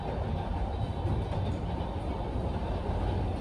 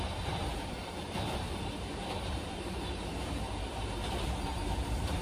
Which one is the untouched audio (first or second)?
first